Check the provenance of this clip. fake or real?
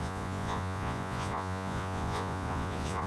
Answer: fake